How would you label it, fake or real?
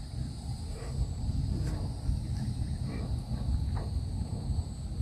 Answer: real